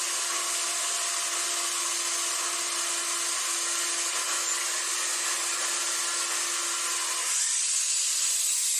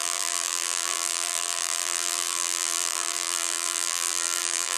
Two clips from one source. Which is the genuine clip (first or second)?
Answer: first